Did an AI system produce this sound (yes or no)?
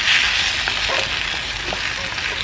no